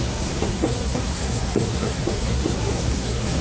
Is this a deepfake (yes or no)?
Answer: yes